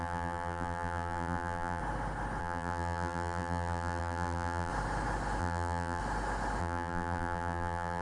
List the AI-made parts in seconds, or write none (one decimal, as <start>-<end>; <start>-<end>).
0.0-1.8; 2.4-4.7; 5.4-6.0; 6.6-8.0

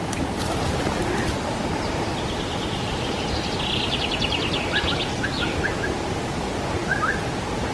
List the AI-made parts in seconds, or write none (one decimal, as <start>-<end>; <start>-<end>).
none

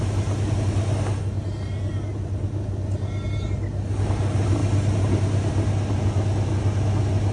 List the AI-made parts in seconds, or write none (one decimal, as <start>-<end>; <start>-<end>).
none

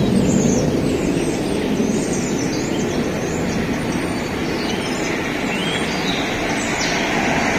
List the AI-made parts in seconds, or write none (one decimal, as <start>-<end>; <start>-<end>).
none

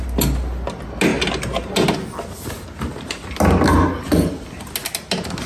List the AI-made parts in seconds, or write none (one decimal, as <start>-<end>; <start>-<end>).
none

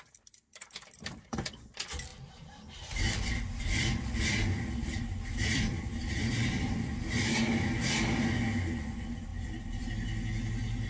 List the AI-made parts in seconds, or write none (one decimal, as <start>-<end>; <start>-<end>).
2.1-7.3; 9.3-9.9